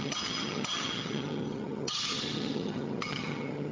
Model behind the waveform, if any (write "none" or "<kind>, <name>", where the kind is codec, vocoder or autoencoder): vocoder, HiFi-GAN